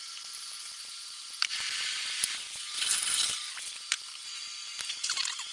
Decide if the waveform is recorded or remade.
recorded